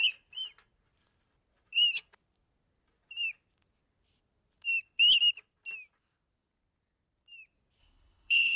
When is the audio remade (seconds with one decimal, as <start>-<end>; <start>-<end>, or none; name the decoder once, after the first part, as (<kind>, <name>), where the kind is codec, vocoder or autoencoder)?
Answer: 7.8-8.6 (codec, HILCodec)